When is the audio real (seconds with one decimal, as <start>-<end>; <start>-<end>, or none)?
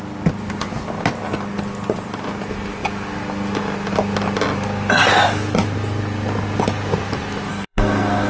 0.0-7.5